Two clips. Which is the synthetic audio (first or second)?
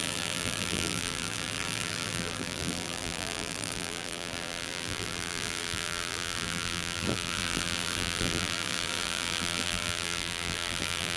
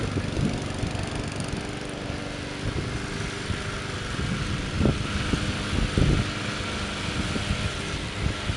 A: first